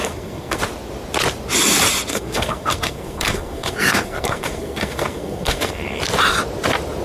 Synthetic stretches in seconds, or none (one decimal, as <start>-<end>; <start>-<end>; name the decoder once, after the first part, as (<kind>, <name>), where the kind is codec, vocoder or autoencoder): 0.0-0.6 (codec, SNAC); 2.1-6.0